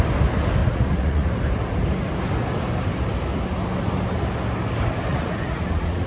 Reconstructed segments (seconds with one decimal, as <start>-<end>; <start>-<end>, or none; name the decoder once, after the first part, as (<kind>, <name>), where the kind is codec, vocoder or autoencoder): 0.6-1.3 (vocoder, Vocos); 5.1-6.1